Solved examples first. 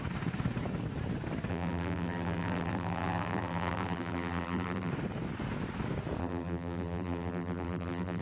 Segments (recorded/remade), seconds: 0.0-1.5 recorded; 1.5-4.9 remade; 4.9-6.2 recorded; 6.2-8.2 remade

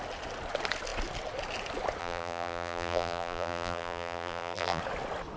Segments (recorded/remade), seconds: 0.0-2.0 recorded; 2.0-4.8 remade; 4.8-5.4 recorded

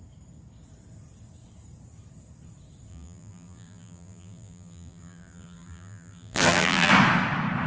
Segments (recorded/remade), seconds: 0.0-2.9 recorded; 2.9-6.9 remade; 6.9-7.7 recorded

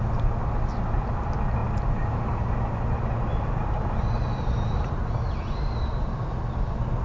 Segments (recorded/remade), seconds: 0.0-1.6 recorded; 1.6-2.6 remade; 2.6-3.3 recorded; 3.3-5.0 remade; 5.0-7.0 recorded